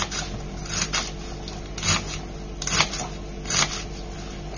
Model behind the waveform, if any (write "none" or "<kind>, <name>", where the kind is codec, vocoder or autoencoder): none